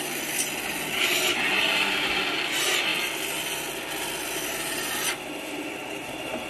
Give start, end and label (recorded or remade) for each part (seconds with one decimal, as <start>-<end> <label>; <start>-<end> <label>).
0.0-6.5 recorded